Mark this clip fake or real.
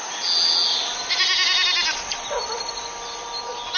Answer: real